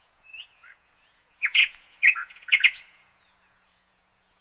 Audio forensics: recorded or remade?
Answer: remade